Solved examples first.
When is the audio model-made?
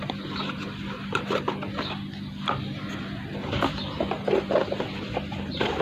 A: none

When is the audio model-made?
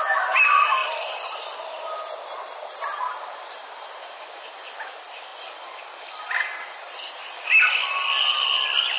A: none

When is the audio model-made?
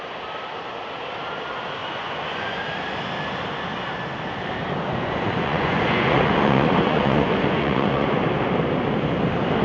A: 1.8-2.6; 4.9-8.2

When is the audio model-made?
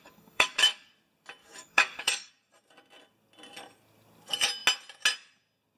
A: 0.0-0.9; 1.4-2.3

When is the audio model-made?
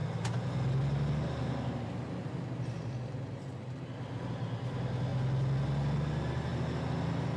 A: none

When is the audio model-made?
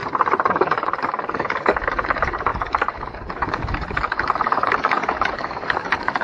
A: 0.5-6.2